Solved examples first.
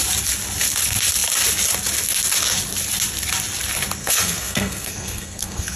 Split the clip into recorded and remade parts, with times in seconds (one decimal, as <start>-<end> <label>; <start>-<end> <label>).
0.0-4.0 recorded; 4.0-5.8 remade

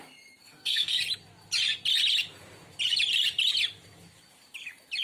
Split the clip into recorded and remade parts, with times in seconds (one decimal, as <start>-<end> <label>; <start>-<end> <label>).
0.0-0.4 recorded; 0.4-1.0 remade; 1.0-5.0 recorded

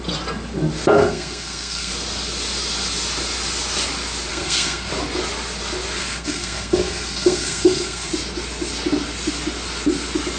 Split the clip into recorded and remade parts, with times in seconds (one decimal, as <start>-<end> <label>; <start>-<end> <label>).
0.0-1.0 recorded; 1.0-1.9 remade; 1.9-4.3 recorded; 4.3-4.9 remade; 4.9-6.0 recorded; 6.0-8.1 remade; 8.1-10.4 recorded

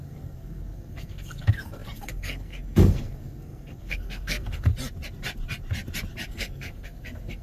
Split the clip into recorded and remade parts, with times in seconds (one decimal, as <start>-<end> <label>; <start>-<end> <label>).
0.0-4.7 remade; 4.7-6.3 recorded; 6.3-7.4 remade

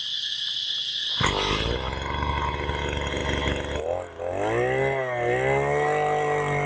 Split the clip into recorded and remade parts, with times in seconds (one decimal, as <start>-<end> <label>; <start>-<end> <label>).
0.0-6.7 recorded

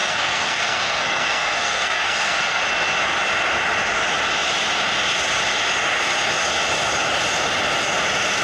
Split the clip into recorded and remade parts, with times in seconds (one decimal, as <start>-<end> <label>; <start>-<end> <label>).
0.0-2.6 remade; 2.6-8.4 recorded

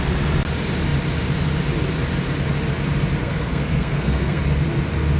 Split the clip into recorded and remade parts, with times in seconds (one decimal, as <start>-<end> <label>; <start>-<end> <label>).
0.0-3.2 recorded; 3.2-4.4 remade; 4.4-5.2 recorded

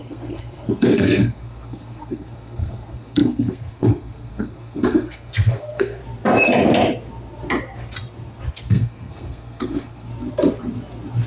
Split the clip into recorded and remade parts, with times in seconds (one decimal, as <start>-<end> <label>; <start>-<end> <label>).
0.0-6.0 remade; 6.0-8.5 recorded; 8.5-10.1 remade; 10.1-11.3 recorded